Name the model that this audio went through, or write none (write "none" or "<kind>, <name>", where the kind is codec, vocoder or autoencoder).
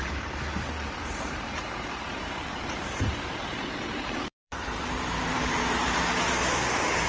vocoder, BigVGAN v2